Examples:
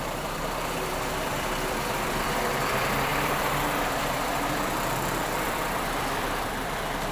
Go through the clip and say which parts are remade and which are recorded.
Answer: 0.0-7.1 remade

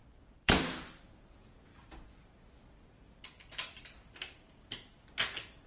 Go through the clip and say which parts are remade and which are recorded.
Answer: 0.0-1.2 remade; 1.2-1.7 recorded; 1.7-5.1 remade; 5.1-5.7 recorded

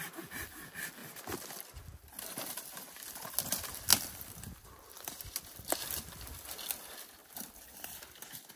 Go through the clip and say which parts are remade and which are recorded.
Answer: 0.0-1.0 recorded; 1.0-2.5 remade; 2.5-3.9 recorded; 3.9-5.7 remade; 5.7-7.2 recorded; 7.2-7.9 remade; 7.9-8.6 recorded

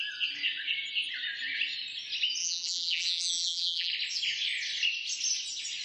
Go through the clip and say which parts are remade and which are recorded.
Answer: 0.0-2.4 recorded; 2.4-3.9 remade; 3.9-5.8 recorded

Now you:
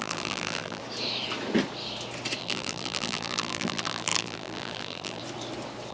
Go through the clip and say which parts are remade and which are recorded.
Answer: 0.0-0.8 remade; 0.8-2.4 recorded; 2.4-5.2 remade; 5.2-5.9 recorded